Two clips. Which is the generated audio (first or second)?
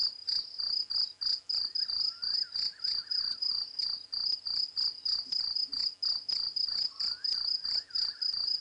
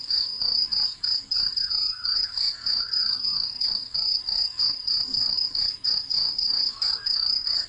second